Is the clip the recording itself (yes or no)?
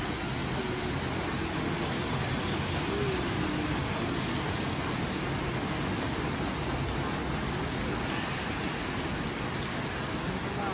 yes